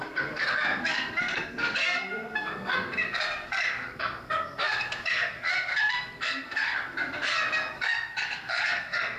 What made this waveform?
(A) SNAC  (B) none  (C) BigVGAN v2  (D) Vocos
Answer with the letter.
A